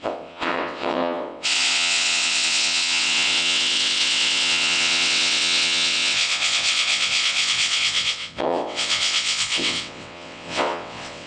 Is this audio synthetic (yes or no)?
yes